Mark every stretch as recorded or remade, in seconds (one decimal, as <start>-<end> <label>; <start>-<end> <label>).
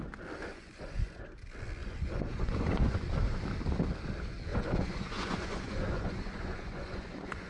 0.0-0.5 recorded; 0.5-1.2 remade; 1.2-1.8 recorded; 1.8-3.0 remade; 3.0-4.5 recorded; 4.5-7.5 remade